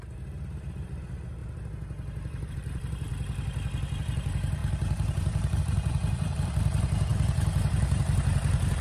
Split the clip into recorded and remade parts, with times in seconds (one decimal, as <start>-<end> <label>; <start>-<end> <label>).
0.0-1.4 remade; 1.4-2.5 recorded; 2.5-3.1 remade; 3.1-4.0 recorded; 4.0-8.8 remade